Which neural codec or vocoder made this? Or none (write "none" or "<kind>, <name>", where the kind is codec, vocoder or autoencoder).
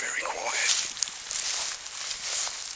none